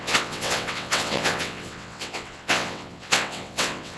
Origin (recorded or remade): remade